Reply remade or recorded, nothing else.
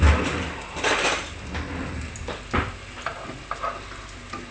recorded